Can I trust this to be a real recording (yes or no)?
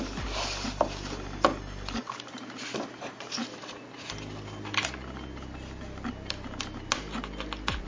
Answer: yes